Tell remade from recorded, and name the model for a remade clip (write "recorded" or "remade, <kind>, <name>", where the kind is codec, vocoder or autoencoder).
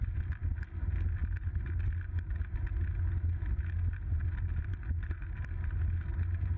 recorded